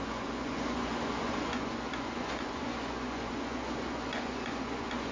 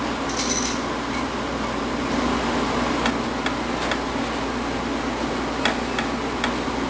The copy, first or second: first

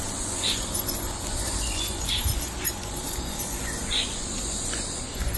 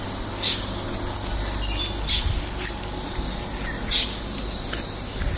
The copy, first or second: first